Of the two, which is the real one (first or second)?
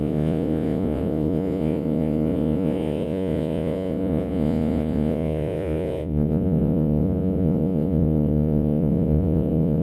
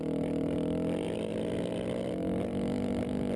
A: second